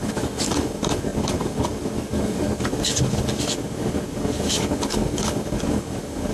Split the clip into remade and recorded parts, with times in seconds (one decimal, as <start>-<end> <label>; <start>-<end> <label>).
0.0-6.3 remade